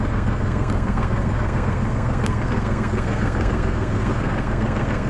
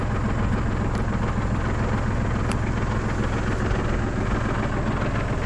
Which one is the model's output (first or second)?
first